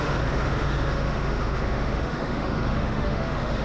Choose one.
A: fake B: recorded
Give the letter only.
A